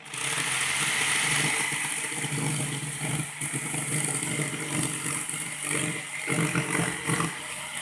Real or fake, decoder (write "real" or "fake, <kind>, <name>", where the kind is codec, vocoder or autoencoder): real